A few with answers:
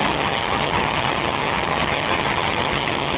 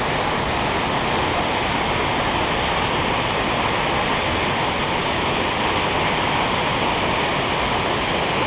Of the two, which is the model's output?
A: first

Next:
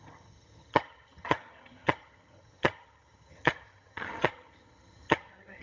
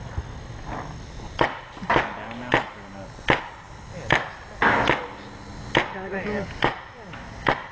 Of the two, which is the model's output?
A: first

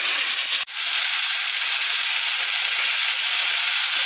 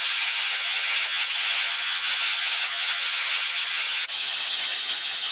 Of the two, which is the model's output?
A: second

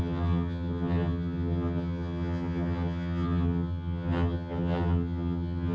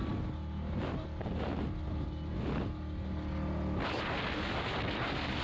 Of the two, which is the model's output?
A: first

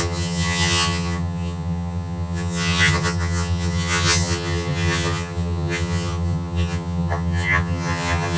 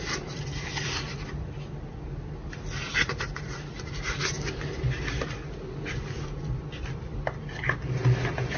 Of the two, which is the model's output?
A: first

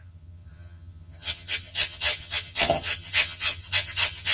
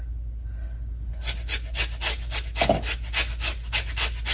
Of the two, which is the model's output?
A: first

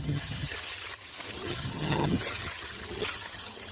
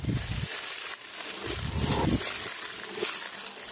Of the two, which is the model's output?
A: first